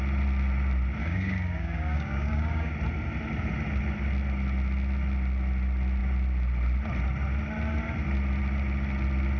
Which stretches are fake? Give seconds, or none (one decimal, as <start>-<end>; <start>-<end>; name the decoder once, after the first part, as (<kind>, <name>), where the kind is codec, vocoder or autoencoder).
1.0-2.7 (codec, DAC)

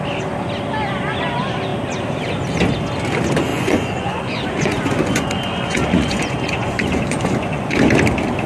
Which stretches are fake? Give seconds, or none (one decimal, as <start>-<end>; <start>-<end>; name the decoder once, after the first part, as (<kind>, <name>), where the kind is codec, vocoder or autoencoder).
3.5-7.7 (vocoder, Vocos)

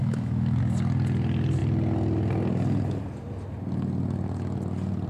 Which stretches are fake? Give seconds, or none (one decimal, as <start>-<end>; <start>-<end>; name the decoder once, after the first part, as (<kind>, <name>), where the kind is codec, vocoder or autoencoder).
0.0-0.6 (autoencoder, DAC-VAE)

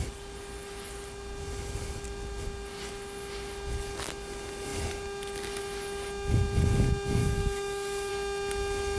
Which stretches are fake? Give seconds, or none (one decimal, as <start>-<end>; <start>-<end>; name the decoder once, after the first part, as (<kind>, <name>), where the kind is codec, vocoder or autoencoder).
7.2-8.1 (codec, DAC)

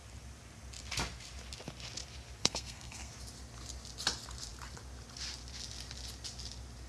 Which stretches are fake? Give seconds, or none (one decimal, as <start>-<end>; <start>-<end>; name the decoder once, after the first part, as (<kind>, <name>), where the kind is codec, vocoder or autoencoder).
2.4-3.1 (codec, SNAC)

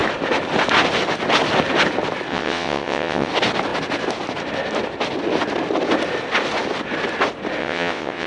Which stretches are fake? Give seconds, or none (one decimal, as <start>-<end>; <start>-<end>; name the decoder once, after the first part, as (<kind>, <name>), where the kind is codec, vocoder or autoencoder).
2.3-3.3 (vocoder, WaveNeXt); 7.6-8.3

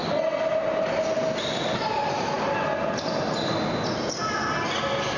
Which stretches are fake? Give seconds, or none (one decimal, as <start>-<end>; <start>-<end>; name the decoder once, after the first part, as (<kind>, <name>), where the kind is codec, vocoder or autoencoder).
none

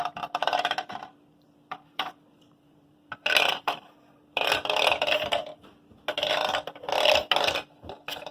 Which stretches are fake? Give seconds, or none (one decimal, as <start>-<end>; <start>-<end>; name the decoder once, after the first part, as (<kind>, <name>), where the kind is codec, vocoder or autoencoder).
0.4-4.5 (vocoder, BigVGAN v2)